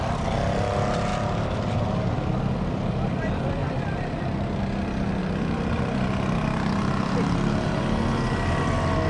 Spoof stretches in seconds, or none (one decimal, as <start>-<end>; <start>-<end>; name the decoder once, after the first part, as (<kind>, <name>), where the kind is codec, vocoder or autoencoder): 3.6-4.6 (vocoder, BigVGAN v2); 5.2-7.8